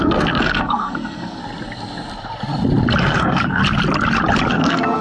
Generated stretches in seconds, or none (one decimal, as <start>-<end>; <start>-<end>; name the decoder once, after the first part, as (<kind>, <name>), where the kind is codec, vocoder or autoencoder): 0.0-1.4 (codec, SNAC); 3.0-3.6; 4.5-5.0